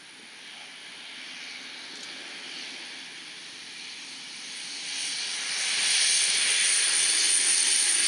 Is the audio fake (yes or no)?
no